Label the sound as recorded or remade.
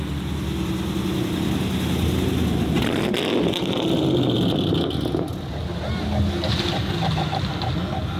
recorded